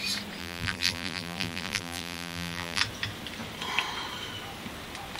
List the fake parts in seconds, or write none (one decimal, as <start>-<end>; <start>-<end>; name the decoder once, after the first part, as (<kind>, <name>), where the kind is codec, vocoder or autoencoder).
0.4-2.8 (vocoder, BigVGAN v2)

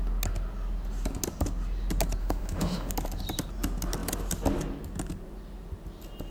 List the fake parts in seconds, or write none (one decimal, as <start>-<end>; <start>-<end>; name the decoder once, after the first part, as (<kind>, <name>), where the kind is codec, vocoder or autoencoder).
2.2-2.9 (autoencoder, DAC-VAE)